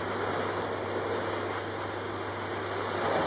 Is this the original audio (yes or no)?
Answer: yes